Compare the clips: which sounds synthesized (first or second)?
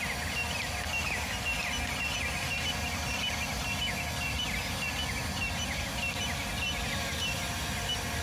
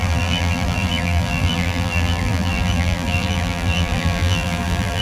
second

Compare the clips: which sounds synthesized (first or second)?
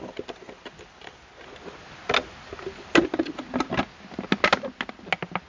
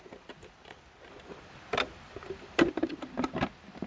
second